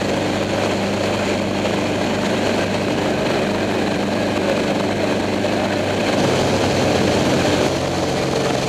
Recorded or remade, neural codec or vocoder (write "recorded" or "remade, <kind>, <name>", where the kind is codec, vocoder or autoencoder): recorded